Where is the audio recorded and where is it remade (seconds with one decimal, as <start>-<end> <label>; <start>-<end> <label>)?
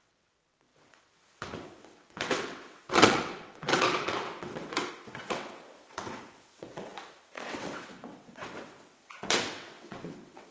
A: 0.0-10.5 remade